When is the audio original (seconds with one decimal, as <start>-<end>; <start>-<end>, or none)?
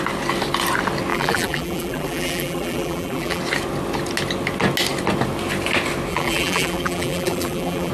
0.0-1.1; 3.4-6.1